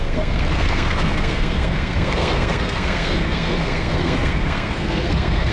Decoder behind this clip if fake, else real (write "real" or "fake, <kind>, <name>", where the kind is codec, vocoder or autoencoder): fake, codec, SNAC